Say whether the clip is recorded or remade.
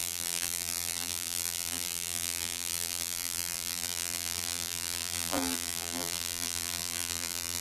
remade